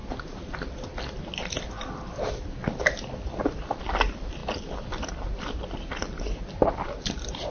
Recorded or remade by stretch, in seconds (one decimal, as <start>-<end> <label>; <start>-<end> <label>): 0.0-1.3 recorded; 1.3-4.4 remade; 4.4-5.1 recorded; 5.1-7.5 remade